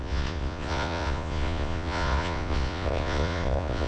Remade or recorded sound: remade